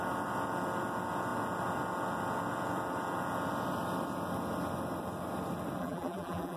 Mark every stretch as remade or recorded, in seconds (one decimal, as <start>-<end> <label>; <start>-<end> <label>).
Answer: 0.0-5.8 recorded; 5.8-6.6 remade